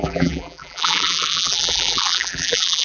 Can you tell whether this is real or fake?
fake